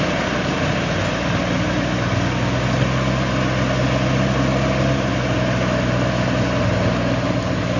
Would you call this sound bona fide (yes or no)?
yes